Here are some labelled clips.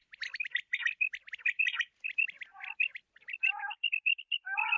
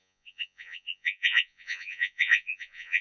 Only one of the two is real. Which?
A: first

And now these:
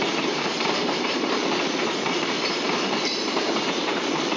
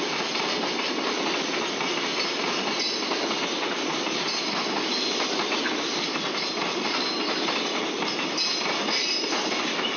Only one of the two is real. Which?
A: second